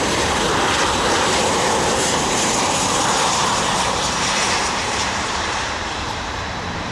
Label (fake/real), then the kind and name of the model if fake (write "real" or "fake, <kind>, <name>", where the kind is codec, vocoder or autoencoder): fake, vocoder, BigVGAN v2